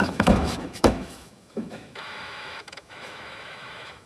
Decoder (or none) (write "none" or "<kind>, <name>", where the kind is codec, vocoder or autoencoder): autoencoder, DAC-VAE